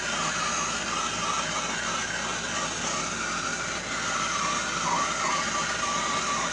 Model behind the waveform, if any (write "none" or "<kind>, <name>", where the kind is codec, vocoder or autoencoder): none